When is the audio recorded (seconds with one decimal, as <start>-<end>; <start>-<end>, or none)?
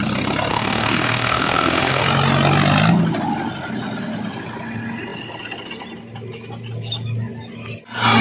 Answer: 0.0-0.5; 2.0-8.2